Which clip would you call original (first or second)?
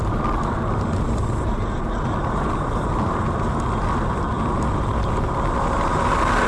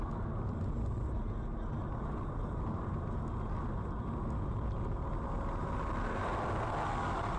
second